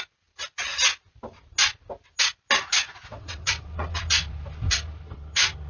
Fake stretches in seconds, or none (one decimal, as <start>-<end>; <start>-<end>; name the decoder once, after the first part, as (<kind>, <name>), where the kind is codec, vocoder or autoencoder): 3.1-4.0 (vocoder, WaveNeXt)